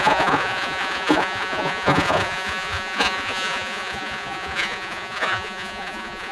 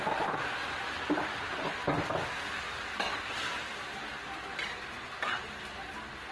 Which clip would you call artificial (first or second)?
first